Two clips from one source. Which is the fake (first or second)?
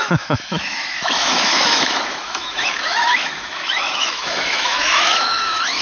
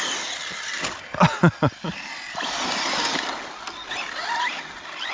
first